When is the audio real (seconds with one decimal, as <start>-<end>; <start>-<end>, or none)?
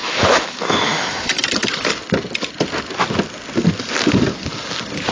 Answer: 1.2-5.1